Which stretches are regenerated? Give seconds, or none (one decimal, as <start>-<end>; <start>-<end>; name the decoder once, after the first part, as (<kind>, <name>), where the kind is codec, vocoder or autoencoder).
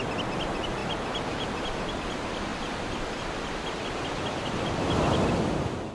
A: none